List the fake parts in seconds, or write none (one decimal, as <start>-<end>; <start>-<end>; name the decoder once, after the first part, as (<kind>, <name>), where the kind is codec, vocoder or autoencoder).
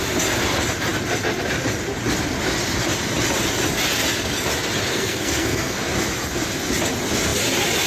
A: 4.9-5.8 (codec, SNAC)